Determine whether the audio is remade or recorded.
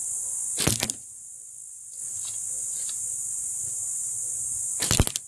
recorded